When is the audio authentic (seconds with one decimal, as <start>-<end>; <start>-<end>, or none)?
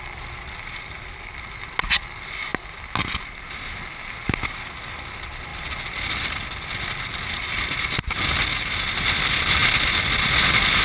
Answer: 0.0-10.8